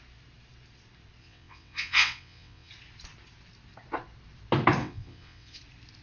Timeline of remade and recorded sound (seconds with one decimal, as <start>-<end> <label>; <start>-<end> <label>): 0.0-1.2 recorded; 1.2-2.7 remade; 2.7-4.8 recorded; 4.8-5.6 remade; 5.6-6.0 recorded